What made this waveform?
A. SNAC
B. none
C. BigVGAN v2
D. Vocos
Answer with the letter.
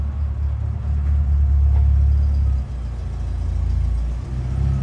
B